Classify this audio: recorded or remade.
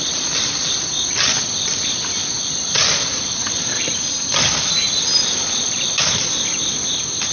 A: recorded